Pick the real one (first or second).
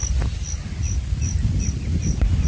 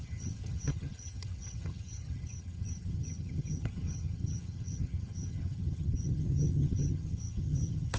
first